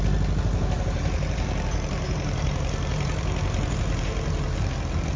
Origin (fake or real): fake